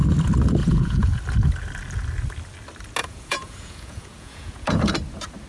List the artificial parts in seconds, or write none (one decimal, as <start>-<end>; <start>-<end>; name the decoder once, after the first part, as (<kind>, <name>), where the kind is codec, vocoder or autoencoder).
0.6-1.2 (vocoder, Vocos); 3.0-4.9